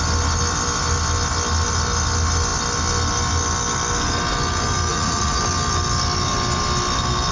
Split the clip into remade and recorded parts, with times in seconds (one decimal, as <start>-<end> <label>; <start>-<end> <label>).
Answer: 0.0-4.9 recorded; 4.9-5.4 remade; 5.4-7.3 recorded

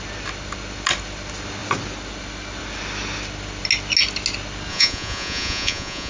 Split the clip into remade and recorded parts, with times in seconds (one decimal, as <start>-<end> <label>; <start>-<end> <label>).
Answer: 0.0-4.7 recorded; 4.7-6.1 remade

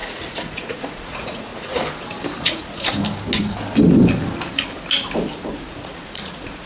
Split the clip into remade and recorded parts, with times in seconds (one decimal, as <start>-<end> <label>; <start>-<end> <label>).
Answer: 0.0-1.5 remade; 1.5-2.4 recorded; 2.4-3.0 remade; 3.0-5.5 recorded; 5.5-6.7 remade

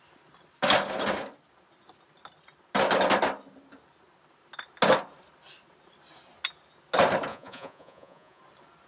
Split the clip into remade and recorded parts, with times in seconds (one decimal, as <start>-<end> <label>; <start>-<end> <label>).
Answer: 0.0-7.3 recorded; 7.3-8.4 remade; 8.4-8.9 recorded

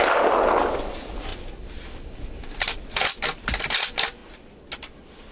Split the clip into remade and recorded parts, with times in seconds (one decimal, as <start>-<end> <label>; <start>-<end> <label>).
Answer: 0.0-5.3 recorded

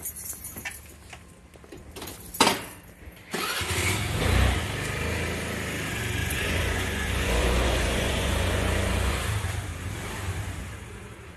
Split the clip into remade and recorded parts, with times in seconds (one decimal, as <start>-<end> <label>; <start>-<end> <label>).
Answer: 0.0-6.2 recorded; 6.2-9.2 remade; 9.2-11.4 recorded

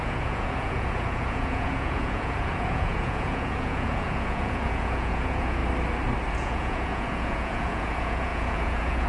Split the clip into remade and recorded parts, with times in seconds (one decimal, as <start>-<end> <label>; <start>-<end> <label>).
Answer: 0.0-5.6 remade; 5.6-6.3 recorded; 6.3-9.1 remade